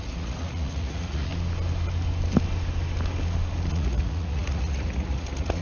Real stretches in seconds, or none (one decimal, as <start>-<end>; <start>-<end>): 1.3-3.7